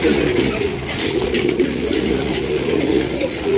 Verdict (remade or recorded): remade